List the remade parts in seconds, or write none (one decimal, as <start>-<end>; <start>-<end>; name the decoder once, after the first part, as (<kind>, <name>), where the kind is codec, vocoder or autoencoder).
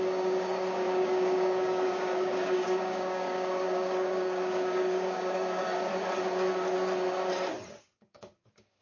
0.0-5.9 (codec, DAC); 7.8-8.8